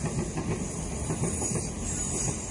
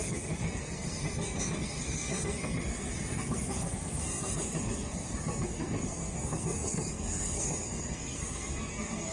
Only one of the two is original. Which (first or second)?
first